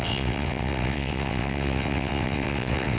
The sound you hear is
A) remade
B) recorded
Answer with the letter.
A